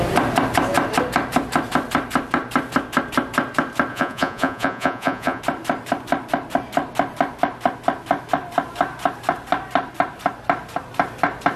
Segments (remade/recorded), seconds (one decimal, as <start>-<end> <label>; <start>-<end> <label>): 0.0-3.9 recorded; 3.9-5.4 remade; 5.4-11.6 recorded